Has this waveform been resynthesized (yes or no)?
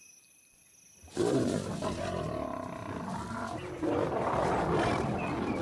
no